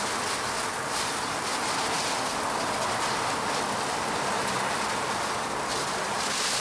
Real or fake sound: real